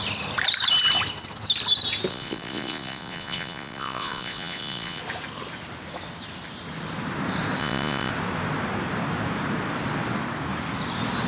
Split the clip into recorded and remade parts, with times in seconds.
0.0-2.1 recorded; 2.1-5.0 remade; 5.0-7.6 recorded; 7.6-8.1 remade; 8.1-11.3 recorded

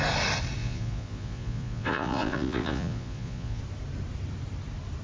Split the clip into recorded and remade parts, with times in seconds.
0.0-0.6 recorded; 0.6-3.6 remade; 3.6-5.0 recorded

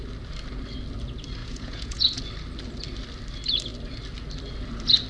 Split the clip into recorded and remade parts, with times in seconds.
0.0-1.4 recorded; 1.4-2.2 remade; 2.2-5.1 recorded

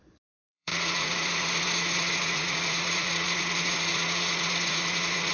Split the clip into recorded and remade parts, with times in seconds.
0.0-5.3 remade

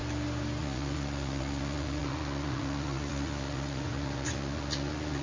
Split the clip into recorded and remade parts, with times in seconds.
0.0-0.6 recorded; 0.6-5.2 remade

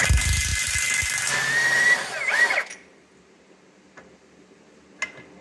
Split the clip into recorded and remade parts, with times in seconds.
0.0-5.4 recorded

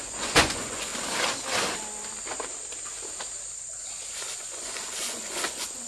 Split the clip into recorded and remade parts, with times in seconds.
0.0-0.9 remade; 0.9-4.4 recorded; 4.4-5.9 remade

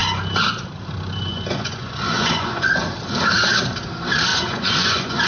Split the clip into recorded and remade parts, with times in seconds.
0.0-1.3 recorded; 1.3-2.9 remade; 2.9-4.3 recorded; 4.3-5.3 remade